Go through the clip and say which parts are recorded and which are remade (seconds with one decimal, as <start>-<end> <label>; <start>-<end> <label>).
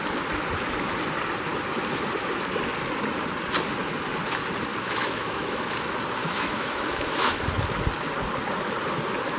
0.0-4.7 recorded; 4.7-5.7 remade; 5.7-6.2 recorded; 6.2-7.4 remade; 7.4-9.4 recorded